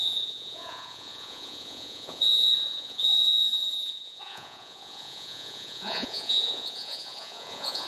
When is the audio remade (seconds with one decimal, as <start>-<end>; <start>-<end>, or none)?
0.0-7.9